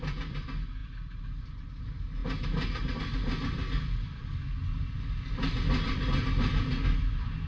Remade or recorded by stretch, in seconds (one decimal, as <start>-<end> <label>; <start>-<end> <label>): 0.0-7.5 recorded